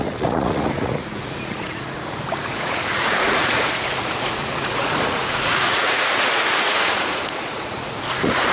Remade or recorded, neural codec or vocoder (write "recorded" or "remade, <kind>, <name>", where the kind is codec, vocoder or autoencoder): remade, vocoder, Vocos